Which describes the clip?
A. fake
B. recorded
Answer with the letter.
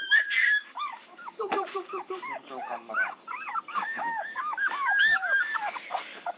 A